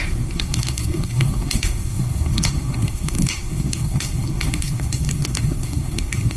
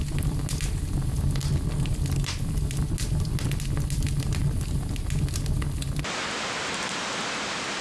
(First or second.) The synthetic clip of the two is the first